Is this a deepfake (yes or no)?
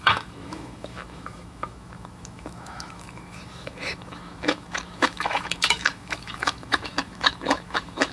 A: yes